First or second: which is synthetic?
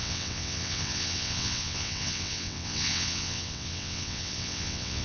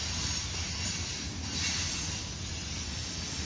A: first